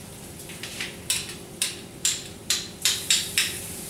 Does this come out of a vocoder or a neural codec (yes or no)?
yes